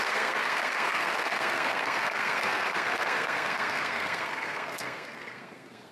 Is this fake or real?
fake